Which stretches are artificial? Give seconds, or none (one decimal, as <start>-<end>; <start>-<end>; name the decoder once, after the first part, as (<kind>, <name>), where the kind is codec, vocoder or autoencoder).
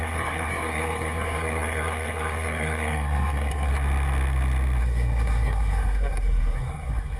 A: 0.0-3.7 (codec, SNAC); 4.8-7.2